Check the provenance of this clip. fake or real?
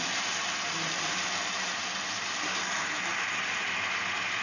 real